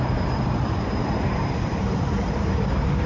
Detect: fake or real fake